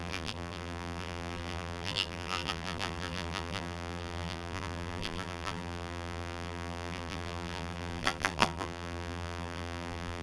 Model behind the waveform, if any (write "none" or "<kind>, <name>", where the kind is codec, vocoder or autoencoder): vocoder, BigVGAN v2